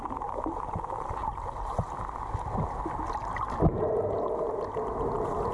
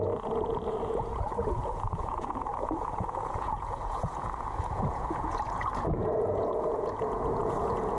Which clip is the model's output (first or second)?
second